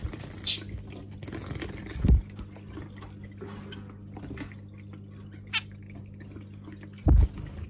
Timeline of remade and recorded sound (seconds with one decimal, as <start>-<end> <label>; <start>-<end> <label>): 0.0-7.7 recorded